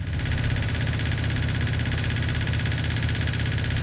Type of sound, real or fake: real